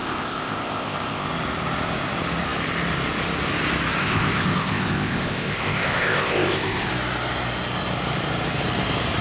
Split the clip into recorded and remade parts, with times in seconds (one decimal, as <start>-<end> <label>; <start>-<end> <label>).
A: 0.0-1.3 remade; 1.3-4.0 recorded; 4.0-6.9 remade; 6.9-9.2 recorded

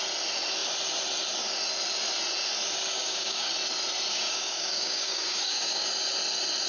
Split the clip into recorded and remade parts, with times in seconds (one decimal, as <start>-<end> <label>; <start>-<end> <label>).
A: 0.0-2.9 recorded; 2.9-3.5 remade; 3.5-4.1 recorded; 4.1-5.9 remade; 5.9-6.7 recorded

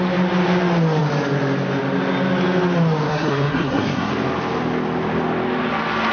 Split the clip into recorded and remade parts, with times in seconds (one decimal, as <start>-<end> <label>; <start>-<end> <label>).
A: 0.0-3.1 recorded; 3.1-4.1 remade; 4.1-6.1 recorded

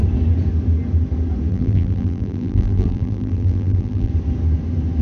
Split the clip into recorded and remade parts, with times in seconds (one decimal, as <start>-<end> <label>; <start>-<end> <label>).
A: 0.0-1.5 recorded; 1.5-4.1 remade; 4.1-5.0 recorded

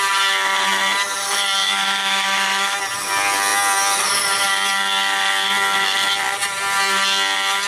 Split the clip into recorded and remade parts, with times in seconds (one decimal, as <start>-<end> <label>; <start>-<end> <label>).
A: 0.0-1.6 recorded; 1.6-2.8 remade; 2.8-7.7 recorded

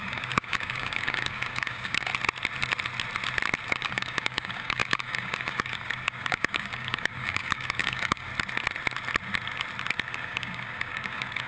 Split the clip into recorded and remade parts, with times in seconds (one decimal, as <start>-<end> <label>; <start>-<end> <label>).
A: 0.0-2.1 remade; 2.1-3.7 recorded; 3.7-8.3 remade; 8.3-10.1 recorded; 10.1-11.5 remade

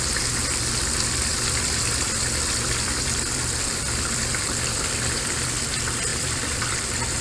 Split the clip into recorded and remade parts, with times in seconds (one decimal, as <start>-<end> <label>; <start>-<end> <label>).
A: 0.0-1.3 recorded; 1.3-5.6 remade; 5.6-6.1 recorded; 6.1-7.2 remade

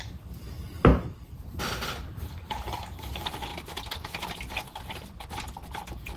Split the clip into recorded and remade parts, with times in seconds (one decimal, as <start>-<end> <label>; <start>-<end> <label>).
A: 0.0-6.2 recorded